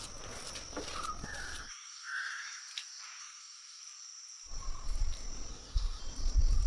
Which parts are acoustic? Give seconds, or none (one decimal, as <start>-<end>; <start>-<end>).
0.0-1.6; 2.6-3.2; 3.8-5.5; 6.0-6.7